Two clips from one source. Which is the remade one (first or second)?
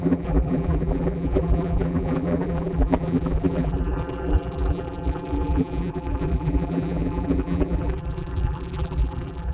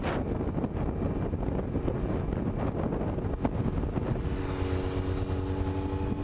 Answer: first